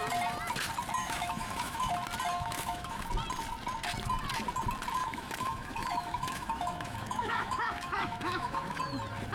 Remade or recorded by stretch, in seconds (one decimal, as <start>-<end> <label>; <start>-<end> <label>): 0.0-1.0 recorded; 1.0-1.9 remade; 1.9-2.3 recorded; 2.3-3.1 remade; 3.1-5.0 recorded; 5.0-8.8 remade; 8.8-9.3 recorded